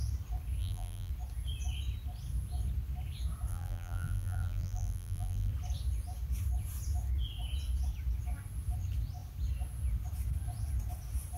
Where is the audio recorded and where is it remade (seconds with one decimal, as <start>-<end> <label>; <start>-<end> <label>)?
0.0-0.6 recorded; 0.6-1.1 remade; 1.1-3.5 recorded; 3.5-5.5 remade; 5.5-11.4 recorded